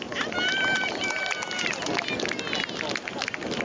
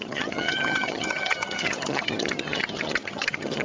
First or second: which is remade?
second